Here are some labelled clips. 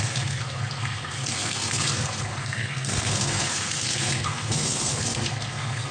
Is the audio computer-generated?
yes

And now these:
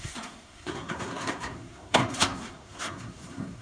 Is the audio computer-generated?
yes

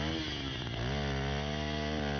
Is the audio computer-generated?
no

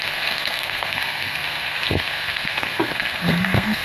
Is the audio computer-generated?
yes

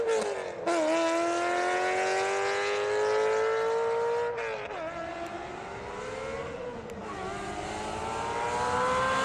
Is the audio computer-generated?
no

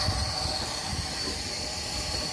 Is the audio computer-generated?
no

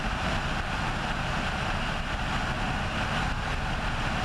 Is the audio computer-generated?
no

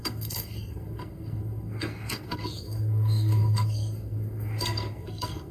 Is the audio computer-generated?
yes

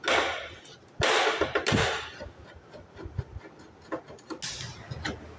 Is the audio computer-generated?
no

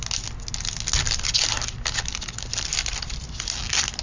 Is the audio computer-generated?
no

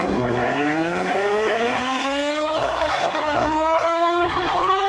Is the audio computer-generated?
yes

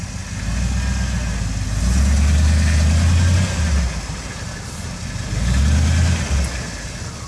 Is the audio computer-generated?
no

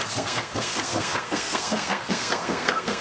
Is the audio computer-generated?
yes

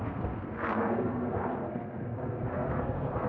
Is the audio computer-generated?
yes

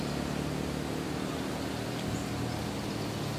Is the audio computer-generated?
no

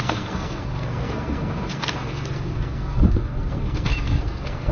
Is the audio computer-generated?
yes